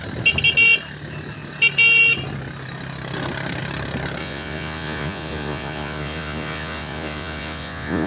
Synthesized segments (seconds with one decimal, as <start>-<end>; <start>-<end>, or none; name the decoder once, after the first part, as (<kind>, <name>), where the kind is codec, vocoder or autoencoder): 4.2-8.1 (vocoder, Vocos)